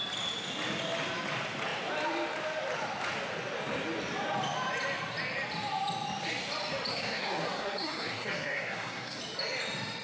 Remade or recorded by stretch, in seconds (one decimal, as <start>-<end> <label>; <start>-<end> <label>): 0.0-6.9 recorded; 6.9-9.2 remade; 9.2-10.0 recorded